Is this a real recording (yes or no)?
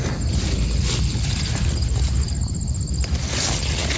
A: yes